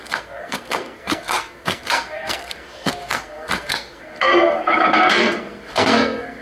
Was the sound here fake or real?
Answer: fake